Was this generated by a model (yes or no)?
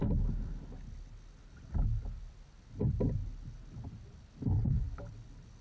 no